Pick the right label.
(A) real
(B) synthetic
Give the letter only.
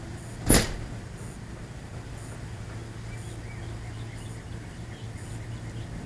A